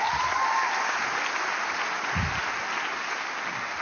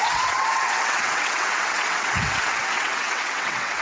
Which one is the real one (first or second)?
first